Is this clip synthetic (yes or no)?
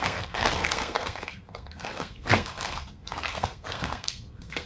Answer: yes